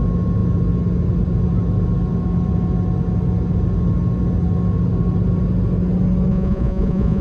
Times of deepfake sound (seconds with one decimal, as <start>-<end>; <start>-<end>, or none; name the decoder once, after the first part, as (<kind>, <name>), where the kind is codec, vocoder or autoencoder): 6.3-7.2 (vocoder, Vocos)